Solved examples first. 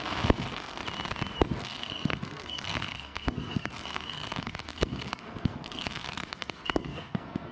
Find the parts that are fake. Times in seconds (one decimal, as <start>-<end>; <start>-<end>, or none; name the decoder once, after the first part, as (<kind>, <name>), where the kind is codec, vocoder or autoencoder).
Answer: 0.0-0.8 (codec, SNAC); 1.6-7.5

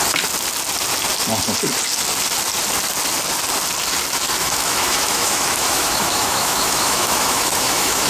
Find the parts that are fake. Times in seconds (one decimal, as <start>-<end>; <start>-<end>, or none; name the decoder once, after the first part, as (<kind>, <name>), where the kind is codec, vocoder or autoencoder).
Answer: 4.4-8.1 (autoencoder, DAC-VAE)

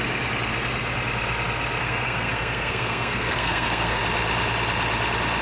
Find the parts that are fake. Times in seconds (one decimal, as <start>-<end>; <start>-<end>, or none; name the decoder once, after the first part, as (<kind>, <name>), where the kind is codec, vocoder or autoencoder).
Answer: 1.8-4.0 (codec, SNAC)

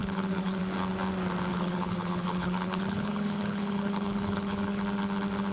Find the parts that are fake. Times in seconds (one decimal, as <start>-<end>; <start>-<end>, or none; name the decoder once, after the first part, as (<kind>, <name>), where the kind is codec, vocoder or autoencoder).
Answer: 0.0-0.6 (codec, HILCodec); 1.5-4.8